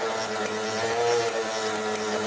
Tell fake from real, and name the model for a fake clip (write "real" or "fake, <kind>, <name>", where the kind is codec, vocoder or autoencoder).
real